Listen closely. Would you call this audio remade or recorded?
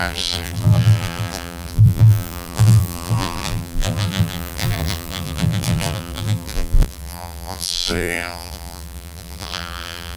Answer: remade